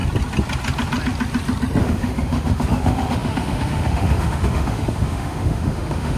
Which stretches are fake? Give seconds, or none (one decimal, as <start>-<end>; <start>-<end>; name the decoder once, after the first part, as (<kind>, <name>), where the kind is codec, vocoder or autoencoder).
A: 1.8-6.2 (autoencoder, DAC-VAE)